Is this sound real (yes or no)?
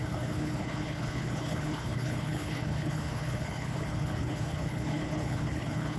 no